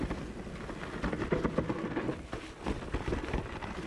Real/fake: real